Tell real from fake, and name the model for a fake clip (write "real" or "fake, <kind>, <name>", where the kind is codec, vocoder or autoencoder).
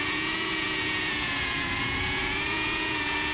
fake, vocoder, Vocos